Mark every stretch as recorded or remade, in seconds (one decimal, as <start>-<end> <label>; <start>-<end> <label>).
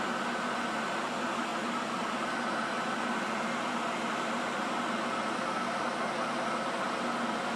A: 0.0-7.6 recorded